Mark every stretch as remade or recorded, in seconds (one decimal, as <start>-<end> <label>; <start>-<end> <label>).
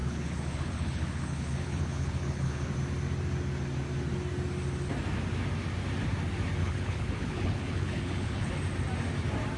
0.0-2.7 remade; 2.7-6.6 recorded; 6.6-8.5 remade; 8.5-9.6 recorded